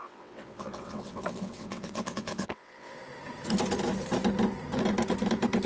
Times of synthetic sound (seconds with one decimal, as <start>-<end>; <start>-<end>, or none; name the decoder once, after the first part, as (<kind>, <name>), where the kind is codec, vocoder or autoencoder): 0.0-3.0 (vocoder, WaveNeXt)